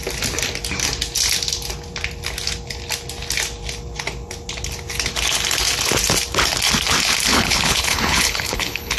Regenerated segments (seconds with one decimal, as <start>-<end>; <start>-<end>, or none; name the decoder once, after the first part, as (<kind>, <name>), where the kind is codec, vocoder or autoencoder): 7.3-9.0 (codec, HILCodec)